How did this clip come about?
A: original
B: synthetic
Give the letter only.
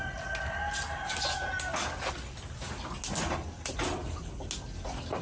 A